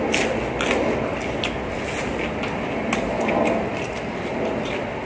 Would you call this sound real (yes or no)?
yes